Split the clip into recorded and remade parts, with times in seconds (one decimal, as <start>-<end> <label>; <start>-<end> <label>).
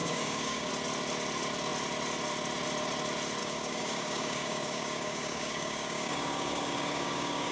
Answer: 0.0-0.7 remade; 0.7-3.4 recorded; 3.4-7.5 remade